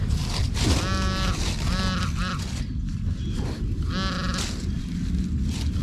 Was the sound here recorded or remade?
recorded